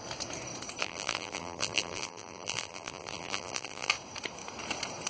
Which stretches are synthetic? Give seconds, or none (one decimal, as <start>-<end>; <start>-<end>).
0.8-3.9